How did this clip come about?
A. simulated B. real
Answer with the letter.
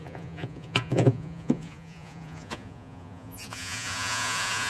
A